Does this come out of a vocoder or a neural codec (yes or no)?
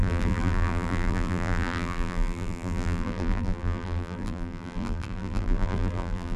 yes